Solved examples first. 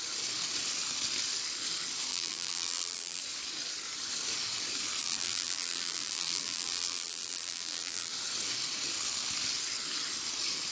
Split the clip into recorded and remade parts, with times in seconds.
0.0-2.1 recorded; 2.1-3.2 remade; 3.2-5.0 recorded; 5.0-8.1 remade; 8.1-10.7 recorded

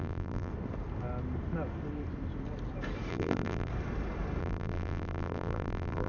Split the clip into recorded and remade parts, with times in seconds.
0.0-0.5 remade; 0.5-3.1 recorded; 3.1-3.7 remade; 3.7-4.4 recorded; 4.4-6.1 remade

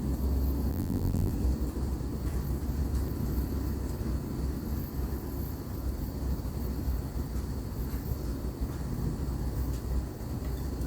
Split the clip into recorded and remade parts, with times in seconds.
0.0-0.7 recorded; 0.7-1.3 remade; 1.3-10.9 recorded

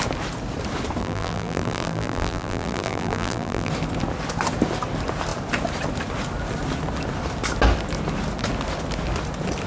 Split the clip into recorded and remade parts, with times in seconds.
0.0-1.0 recorded; 1.0-3.7 remade; 3.7-9.7 recorded

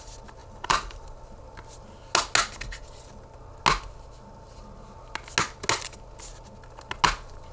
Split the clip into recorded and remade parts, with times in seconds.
0.0-0.4 recorded; 0.4-1.4 remade; 1.4-7.5 recorded

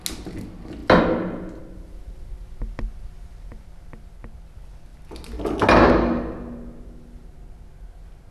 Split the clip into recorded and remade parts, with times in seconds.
0.0-8.3 recorded